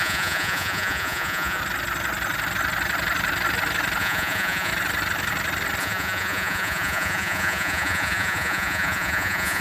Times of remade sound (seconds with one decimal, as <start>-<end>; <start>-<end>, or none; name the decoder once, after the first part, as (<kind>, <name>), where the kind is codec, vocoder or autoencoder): 0.0-1.6 (vocoder, Vocos); 4.0-4.7; 5.8-9.6